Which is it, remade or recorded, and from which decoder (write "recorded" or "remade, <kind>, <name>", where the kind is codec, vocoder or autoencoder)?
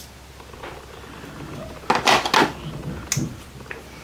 recorded